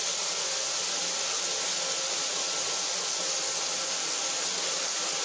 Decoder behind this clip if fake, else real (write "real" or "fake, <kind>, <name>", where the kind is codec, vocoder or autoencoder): real